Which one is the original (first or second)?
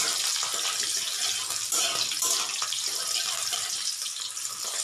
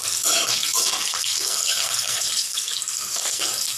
first